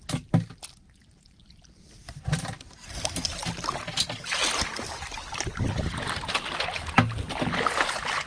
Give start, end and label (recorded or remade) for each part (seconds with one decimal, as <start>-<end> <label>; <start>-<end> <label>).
0.0-8.3 recorded